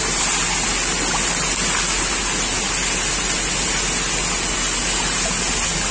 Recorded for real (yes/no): yes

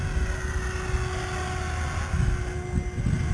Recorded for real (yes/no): yes